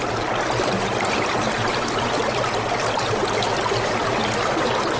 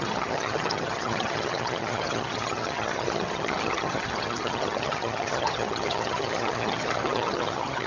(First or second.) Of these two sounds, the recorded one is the first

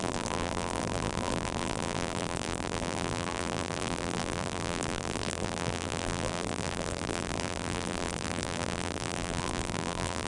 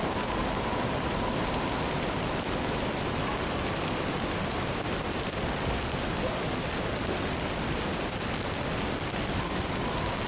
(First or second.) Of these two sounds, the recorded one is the second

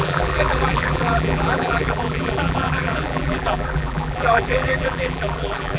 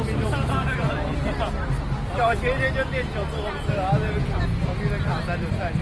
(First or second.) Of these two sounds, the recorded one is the second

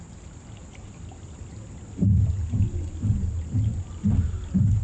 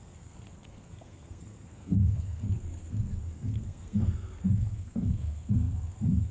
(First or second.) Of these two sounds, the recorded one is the first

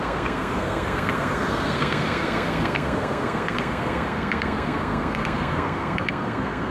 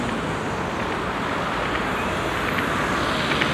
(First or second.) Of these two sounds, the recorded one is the second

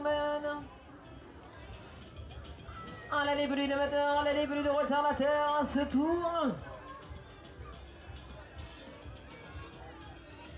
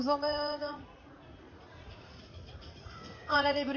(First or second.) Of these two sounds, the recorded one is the first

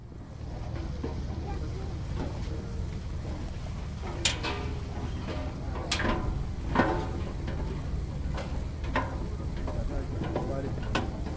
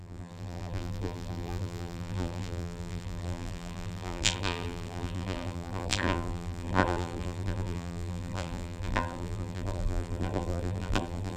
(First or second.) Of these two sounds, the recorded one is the first